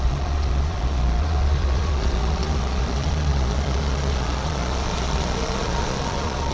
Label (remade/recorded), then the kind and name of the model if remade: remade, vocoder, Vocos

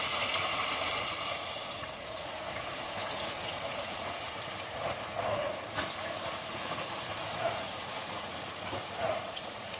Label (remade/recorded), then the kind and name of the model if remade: remade, vocoder, Vocos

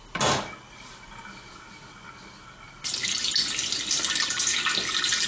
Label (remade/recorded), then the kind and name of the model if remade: recorded